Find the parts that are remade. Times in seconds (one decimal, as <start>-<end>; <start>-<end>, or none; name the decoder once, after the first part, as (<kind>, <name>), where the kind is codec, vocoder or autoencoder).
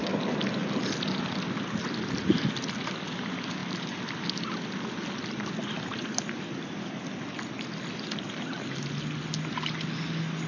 none